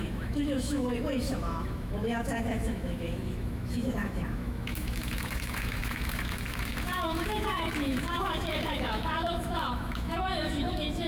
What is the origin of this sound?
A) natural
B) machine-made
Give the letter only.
B